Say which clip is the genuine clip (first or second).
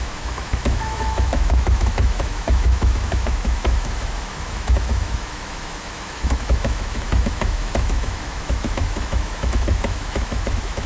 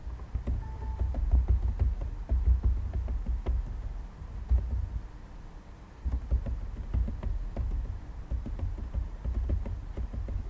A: second